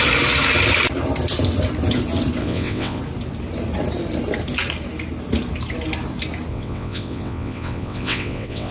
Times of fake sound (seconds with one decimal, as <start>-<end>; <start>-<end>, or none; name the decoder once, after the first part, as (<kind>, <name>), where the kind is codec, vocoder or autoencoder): 2.4-3.0 (vocoder, WaveNeXt); 6.5-8.7